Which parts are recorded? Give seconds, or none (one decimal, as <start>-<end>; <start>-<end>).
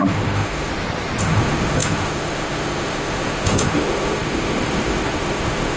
0.7-1.2